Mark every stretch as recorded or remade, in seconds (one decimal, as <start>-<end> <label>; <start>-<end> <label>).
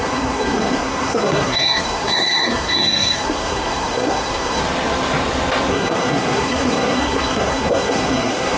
0.0-4.6 remade; 4.6-5.7 recorded; 5.7-8.6 remade